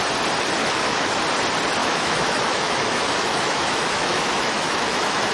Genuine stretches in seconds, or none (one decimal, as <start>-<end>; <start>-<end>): 0.0-0.6; 1.2-1.8